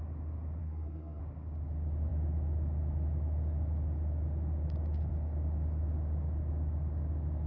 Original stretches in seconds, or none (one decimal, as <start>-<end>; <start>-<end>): 0.0-0.6; 1.2-7.5